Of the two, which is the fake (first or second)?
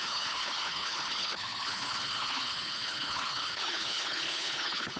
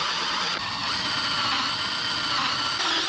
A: first